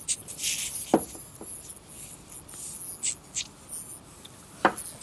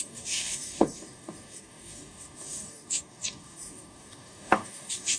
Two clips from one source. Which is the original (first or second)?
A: first